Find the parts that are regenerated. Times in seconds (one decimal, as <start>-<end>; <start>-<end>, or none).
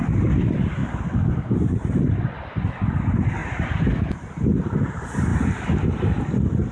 none